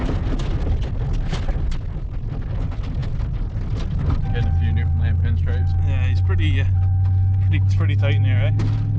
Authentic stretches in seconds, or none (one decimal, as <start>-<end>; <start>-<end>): 0.0-9.0